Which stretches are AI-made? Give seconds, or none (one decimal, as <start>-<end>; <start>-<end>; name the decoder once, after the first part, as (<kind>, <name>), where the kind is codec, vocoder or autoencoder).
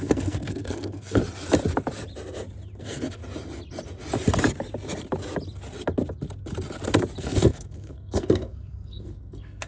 0.0-1.2 (codec, SNAC); 2.8-3.2; 7.2-9.7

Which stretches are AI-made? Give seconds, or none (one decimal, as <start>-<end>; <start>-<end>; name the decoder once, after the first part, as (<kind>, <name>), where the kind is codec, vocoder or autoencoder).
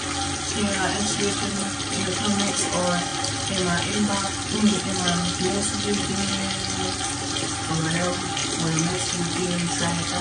none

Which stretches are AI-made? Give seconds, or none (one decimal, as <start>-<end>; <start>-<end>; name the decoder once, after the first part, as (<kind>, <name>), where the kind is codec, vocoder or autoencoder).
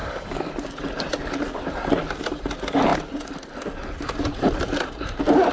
0.0-0.5 (codec, DAC)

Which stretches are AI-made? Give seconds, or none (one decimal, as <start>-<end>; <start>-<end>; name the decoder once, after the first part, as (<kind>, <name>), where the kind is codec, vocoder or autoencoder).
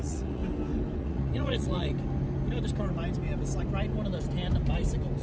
0.0-0.4 (vocoder, Vocos); 1.0-1.9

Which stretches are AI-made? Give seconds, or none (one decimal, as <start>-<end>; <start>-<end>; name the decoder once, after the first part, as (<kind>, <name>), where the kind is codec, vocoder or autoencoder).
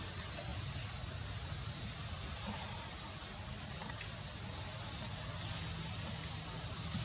0.0-7.0 (vocoder, BigVGAN v2)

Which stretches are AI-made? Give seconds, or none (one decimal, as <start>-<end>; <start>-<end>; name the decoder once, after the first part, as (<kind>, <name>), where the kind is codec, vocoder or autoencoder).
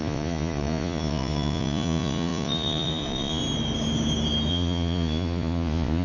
0.0-3.4 (vocoder, Vocos); 4.5-6.0